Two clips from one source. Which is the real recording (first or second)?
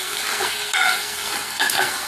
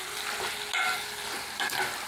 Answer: second